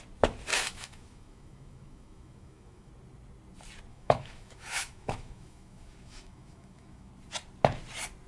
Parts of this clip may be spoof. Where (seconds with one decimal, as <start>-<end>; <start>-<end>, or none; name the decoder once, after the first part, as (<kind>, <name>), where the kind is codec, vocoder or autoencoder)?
0.5-2.9 (autoencoder, DAC-VAE); 3.9-7.1